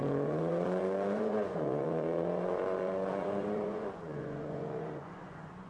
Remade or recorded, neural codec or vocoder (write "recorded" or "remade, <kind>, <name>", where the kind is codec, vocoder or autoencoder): remade, vocoder, Vocos